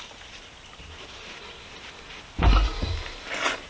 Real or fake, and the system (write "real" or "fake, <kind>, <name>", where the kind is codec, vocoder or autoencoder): real